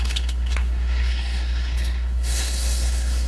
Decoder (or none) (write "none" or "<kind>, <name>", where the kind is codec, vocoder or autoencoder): codec, SNAC